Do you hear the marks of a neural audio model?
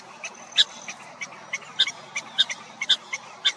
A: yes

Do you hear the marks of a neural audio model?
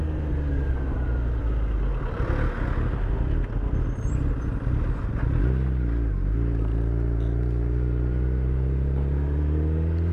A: no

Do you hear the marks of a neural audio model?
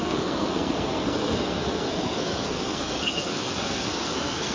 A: yes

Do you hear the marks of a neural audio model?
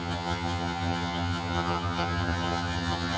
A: yes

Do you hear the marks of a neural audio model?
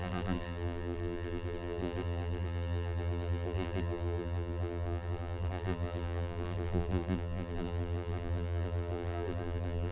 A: yes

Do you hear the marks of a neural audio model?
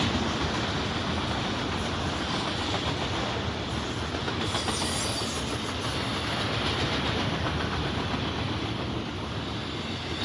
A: no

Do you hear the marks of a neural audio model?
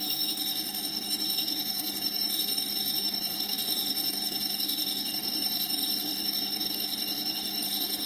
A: yes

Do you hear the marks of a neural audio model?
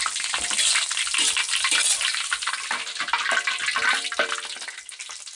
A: no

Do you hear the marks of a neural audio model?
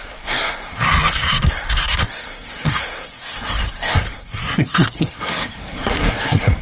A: yes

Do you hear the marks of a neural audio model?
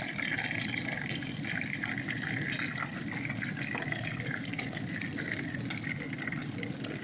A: no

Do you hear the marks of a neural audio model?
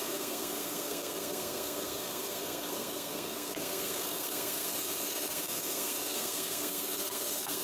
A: yes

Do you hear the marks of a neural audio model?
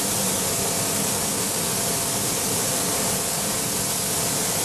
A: yes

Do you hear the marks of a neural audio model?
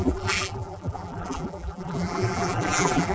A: yes